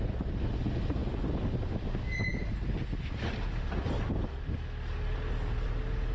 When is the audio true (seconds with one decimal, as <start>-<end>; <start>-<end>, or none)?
0.0-6.1